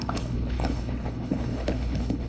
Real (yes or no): no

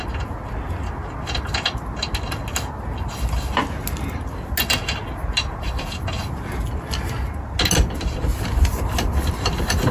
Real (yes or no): yes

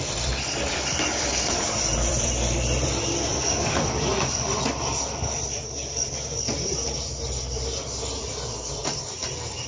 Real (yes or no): no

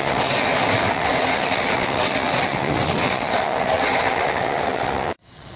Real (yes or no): no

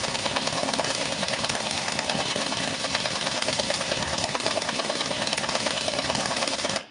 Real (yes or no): no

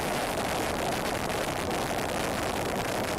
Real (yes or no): yes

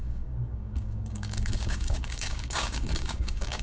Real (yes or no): no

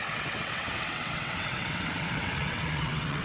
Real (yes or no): no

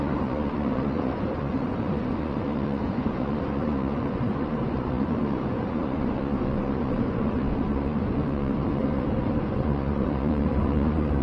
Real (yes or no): no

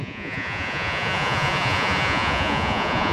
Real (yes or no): no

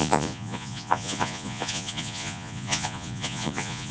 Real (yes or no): no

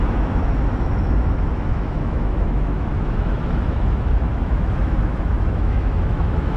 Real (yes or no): no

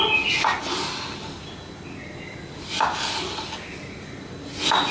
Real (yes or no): yes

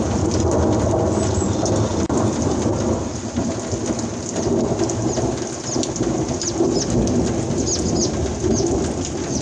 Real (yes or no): yes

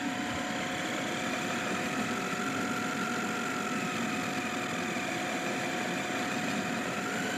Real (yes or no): yes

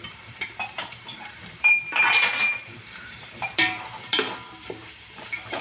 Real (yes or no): no